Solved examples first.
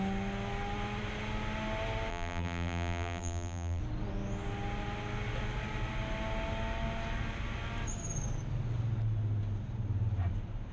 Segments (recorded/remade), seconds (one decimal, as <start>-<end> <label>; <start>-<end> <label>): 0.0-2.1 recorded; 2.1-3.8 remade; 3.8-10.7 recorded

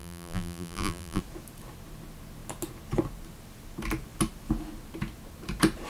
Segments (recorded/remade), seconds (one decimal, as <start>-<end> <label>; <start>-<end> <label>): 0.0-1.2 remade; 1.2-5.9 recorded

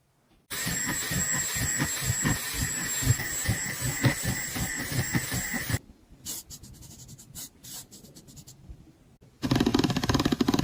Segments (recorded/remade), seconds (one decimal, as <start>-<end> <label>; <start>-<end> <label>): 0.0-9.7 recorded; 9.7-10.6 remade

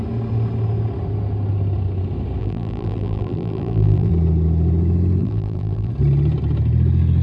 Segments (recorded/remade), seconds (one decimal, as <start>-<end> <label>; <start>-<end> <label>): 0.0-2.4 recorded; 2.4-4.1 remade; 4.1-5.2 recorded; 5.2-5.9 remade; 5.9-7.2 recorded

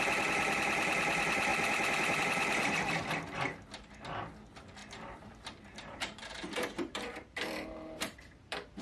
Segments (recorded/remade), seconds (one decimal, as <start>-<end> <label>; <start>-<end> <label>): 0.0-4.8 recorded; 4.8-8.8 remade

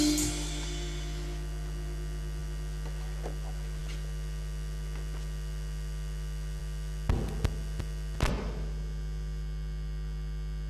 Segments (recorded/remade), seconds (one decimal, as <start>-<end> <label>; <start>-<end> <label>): 0.0-10.7 recorded